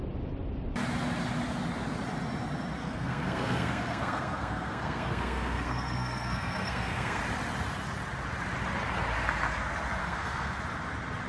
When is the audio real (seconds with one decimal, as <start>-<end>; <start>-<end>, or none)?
0.0-2.8; 7.2-10.0; 10.6-11.3